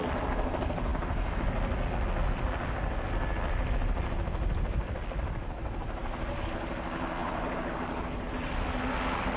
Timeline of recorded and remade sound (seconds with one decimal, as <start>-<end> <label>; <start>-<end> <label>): 0.0-7.2 recorded; 7.2-8.5 remade; 8.5-9.4 recorded